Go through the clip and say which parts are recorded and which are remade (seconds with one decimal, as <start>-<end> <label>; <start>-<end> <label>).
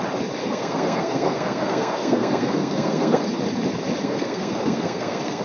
0.0-0.4 recorded; 0.4-3.4 remade; 3.4-4.0 recorded; 4.0-5.4 remade